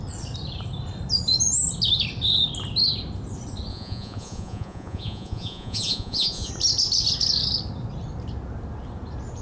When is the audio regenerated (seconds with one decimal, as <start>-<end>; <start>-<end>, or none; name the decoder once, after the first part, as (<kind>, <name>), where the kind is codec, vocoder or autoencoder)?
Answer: 3.7-6.5 (vocoder, Vocos)